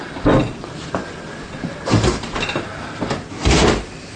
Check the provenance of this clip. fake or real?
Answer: fake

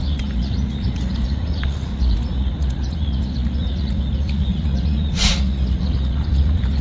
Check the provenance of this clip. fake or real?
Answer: fake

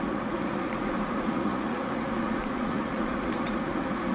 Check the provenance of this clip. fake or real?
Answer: fake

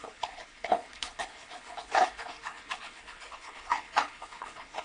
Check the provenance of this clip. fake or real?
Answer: fake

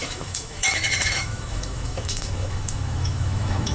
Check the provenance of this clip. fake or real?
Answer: fake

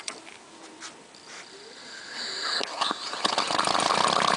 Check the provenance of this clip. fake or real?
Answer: real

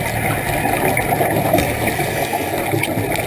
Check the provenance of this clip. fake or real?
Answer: real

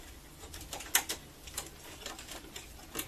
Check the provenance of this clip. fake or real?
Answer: real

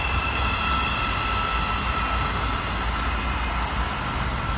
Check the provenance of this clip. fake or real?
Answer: real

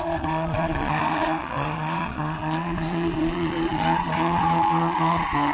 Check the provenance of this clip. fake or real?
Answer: fake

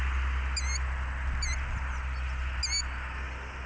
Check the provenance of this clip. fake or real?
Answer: real